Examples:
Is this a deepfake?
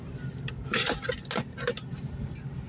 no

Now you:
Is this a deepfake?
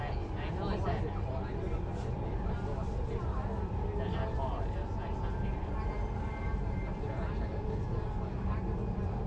no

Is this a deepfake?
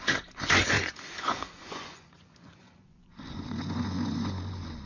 yes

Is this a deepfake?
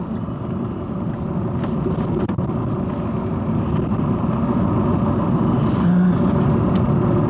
no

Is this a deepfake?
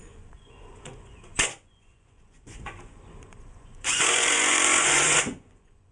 yes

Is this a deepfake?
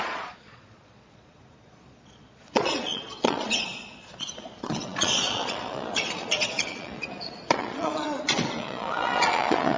yes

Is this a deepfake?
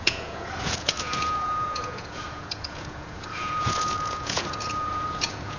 yes